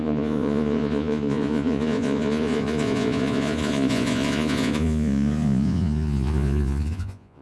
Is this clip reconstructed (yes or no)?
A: yes